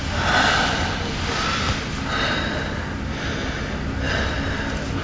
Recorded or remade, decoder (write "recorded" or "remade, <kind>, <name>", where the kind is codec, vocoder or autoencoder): recorded